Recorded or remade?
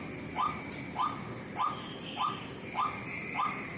recorded